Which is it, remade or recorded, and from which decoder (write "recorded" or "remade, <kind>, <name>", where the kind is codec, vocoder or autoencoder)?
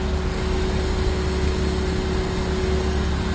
recorded